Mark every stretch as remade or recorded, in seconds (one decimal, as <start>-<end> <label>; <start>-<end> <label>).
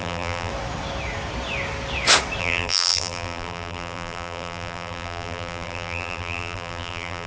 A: 0.0-0.5 remade; 0.5-2.4 recorded; 2.4-7.3 remade